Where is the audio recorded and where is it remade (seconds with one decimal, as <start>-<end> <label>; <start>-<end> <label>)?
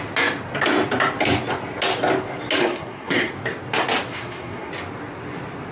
0.0-2.6 recorded; 2.6-3.3 remade; 3.3-4.1 recorded; 4.1-4.7 remade; 4.7-5.7 recorded